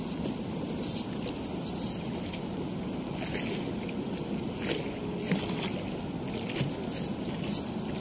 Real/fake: real